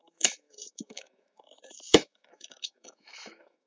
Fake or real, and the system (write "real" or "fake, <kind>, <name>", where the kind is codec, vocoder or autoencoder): fake, autoencoder, DAC-VAE